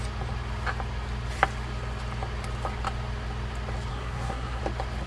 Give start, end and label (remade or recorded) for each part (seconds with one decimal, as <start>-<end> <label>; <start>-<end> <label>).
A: 0.0-3.9 recorded; 3.9-4.6 remade; 4.6-5.1 recorded